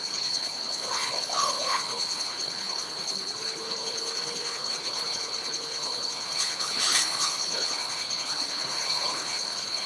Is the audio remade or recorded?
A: remade